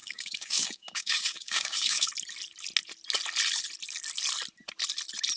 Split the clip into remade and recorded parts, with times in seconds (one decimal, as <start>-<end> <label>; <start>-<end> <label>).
0.0-2.1 remade; 2.1-5.4 recorded